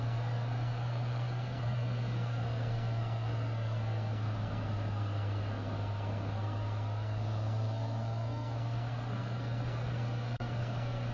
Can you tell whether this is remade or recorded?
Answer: remade